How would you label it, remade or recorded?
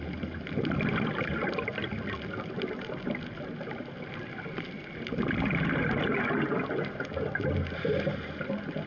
recorded